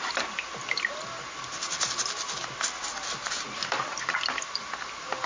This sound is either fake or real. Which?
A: real